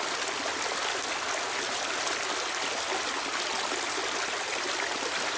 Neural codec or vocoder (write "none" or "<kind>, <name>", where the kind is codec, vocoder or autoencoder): none